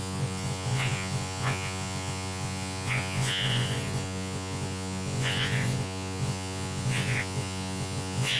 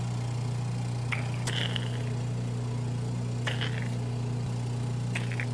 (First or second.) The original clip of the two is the second